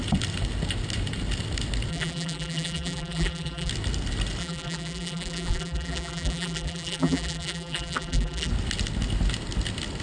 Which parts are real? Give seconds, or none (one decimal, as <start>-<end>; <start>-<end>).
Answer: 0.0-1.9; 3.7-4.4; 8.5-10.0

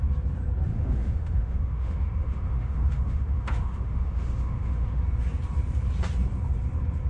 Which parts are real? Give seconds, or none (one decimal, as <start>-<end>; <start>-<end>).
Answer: 0.0-0.7; 5.0-7.1

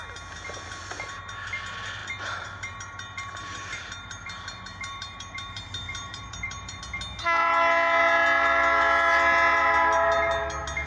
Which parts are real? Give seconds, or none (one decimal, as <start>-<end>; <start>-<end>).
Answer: 0.0-0.8; 1.3-2.0; 6.8-10.9

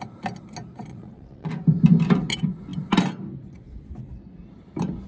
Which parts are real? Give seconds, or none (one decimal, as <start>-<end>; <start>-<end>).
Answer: 0.0-0.9; 1.5-5.1

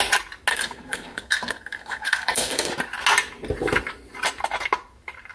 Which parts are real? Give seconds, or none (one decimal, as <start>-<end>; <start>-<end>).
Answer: 0.0-0.5; 2.7-5.3

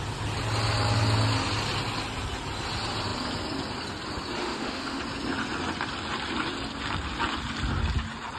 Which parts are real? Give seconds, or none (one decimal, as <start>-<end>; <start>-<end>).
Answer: 0.0-4.4; 5.0-8.4